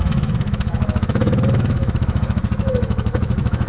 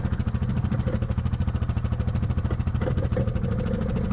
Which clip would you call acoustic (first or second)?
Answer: second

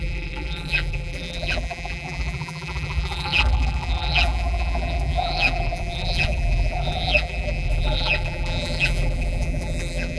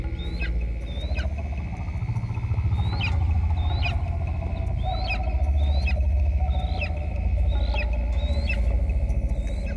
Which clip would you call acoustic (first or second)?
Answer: second